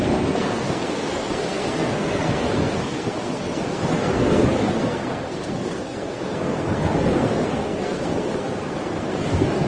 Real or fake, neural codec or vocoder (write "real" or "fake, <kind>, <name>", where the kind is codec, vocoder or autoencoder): fake, codec, SNAC